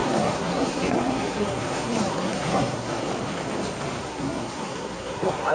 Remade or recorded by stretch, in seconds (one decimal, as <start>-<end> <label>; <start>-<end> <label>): 0.0-3.1 remade; 3.1-4.0 recorded; 4.0-5.5 remade